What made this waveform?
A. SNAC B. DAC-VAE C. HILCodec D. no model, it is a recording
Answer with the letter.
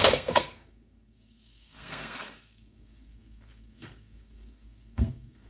A